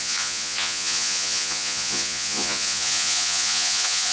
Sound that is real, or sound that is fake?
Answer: fake